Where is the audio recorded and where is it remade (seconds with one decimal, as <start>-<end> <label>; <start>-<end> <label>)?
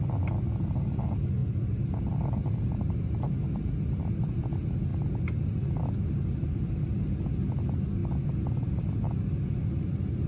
0.0-10.3 recorded